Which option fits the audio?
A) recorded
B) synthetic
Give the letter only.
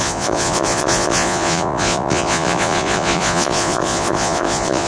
B